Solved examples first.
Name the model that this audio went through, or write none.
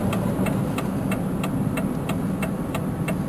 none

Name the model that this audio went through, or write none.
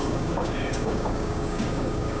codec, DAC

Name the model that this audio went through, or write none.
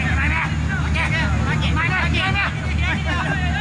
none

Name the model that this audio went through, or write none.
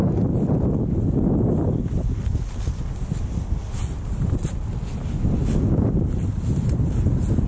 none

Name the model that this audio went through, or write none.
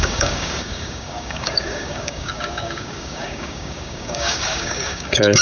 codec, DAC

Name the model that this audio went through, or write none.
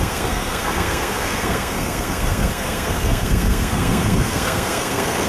codec, SNAC